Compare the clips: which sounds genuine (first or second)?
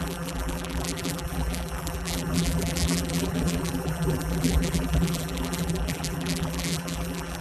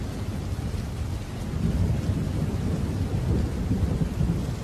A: second